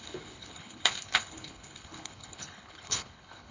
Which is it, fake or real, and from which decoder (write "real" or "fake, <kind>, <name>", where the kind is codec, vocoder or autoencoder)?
fake, codec, HILCodec